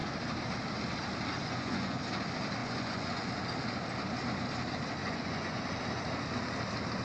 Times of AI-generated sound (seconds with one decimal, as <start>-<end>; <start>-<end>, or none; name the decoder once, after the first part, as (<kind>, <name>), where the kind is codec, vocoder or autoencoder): 1.4-2.0 (vocoder, Vocos); 2.6-3.3; 5.0-5.6